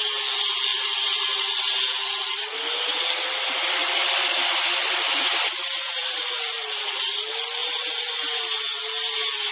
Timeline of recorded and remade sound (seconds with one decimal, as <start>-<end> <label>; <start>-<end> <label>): 0.0-0.7 recorded; 0.7-1.7 remade; 1.7-6.0 recorded; 6.0-6.8 remade; 6.8-7.6 recorded; 7.6-8.4 remade; 8.4-9.5 recorded